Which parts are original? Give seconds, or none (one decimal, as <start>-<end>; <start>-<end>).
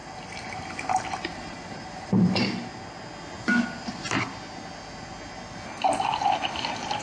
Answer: 0.0-0.7; 2.7-7.0